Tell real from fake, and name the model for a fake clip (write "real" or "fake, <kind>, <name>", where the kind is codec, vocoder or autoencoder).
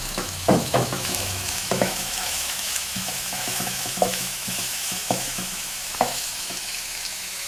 fake, autoencoder, DAC-VAE